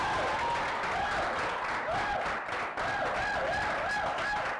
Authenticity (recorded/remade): recorded